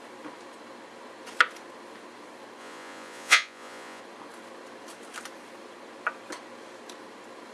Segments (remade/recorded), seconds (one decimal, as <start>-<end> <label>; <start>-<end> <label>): 0.0-2.6 recorded; 2.6-4.0 remade; 4.0-7.5 recorded